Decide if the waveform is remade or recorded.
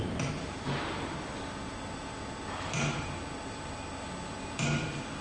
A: recorded